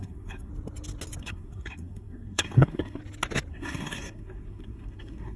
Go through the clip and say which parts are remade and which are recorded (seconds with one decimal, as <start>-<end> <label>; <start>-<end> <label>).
0.0-0.5 remade; 0.5-1.2 recorded; 1.2-3.0 remade; 3.0-3.5 recorded; 3.5-5.4 remade